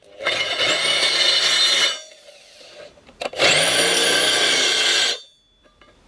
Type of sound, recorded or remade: recorded